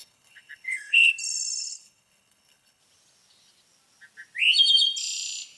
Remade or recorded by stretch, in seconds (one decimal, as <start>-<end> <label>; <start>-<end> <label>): 0.0-1.1 remade; 1.1-1.6 recorded; 1.6-2.8 remade; 2.8-5.6 recorded